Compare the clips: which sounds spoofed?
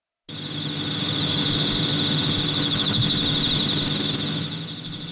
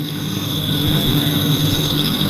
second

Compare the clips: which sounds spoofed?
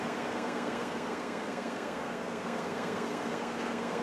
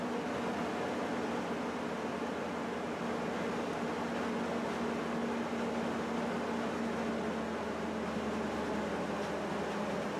first